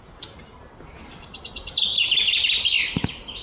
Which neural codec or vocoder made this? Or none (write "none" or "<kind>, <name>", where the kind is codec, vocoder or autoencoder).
none